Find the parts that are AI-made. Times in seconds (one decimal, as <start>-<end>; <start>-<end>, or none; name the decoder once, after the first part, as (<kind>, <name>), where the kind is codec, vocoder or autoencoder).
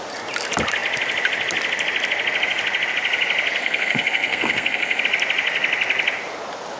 3.6-5.0 (codec, SNAC)